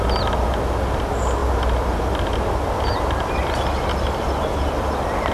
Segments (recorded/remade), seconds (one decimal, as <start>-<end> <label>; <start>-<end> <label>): 0.0-5.3 recorded